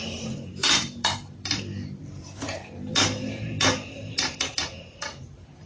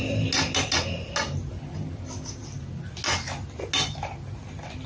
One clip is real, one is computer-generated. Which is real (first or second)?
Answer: second